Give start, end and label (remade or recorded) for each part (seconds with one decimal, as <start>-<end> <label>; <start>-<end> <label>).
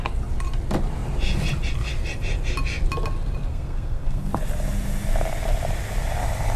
0.0-3.5 recorded; 3.5-4.3 remade; 4.3-6.6 recorded